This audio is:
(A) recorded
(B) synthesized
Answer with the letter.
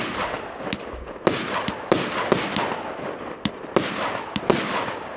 A